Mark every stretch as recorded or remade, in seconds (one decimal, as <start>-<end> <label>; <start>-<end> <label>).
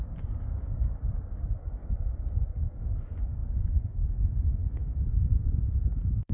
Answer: 0.0-1.8 remade; 1.8-2.6 recorded; 2.6-6.3 remade